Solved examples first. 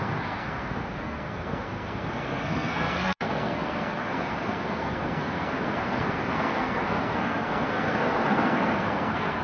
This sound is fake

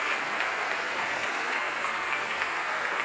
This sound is fake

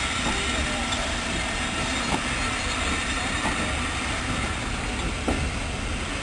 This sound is real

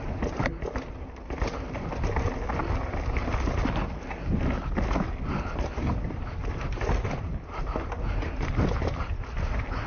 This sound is real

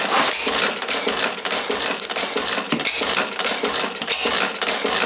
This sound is real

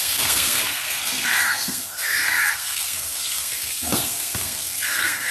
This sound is fake